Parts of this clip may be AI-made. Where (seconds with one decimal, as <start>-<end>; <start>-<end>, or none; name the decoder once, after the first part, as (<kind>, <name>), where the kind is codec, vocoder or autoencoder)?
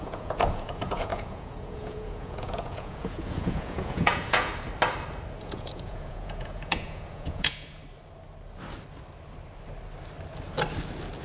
0.0-4.5 (vocoder, Vocos); 5.4-7.8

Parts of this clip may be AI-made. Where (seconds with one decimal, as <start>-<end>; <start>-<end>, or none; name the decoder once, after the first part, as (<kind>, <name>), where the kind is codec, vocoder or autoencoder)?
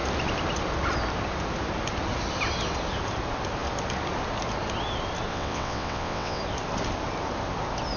5.3-6.4 (vocoder, WaveNeXt)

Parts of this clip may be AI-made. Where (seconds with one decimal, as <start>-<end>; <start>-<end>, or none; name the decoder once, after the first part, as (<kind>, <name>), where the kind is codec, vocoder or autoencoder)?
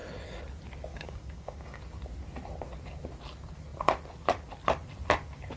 0.9-1.8 (codec, DAC)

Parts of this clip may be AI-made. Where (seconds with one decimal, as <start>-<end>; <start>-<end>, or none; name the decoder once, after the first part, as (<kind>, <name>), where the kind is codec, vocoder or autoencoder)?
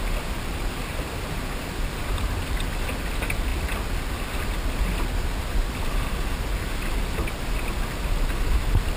none